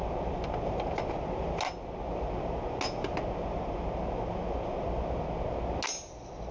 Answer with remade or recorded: recorded